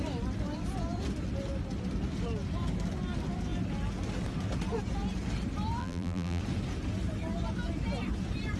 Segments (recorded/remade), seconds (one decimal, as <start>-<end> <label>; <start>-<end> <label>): 0.0-5.8 recorded; 5.8-6.4 remade; 6.4-8.6 recorded